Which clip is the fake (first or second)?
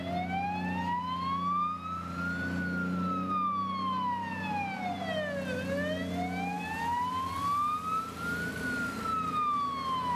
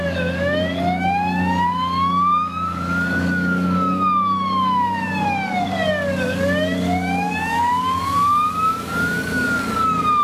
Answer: second